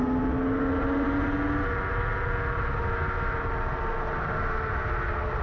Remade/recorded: recorded